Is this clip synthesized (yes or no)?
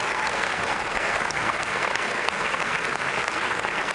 yes